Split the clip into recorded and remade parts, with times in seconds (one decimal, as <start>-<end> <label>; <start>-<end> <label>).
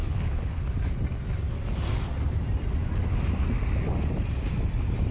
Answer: 0.0-0.6 remade; 0.6-5.1 recorded